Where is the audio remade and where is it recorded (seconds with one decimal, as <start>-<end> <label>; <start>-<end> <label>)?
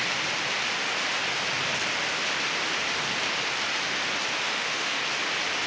0.0-4.4 recorded; 4.4-5.0 remade; 5.0-5.7 recorded